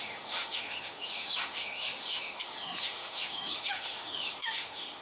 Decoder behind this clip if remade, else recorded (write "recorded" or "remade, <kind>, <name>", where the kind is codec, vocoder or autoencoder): remade, autoencoder, DAC-VAE